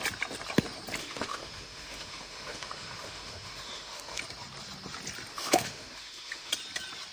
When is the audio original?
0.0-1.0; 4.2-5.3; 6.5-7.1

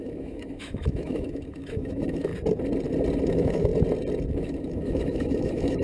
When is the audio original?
2.3-3.3; 3.7-4.3

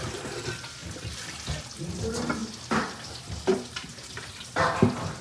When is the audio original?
0.0-5.2